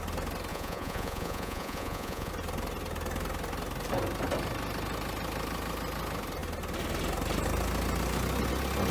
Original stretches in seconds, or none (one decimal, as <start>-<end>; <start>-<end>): 0.0-0.5; 2.3-8.9